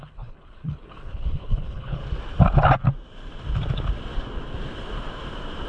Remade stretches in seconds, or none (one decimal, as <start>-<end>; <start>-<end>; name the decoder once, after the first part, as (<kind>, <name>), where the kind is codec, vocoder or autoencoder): 0.0-2.0 (codec, HILCodec)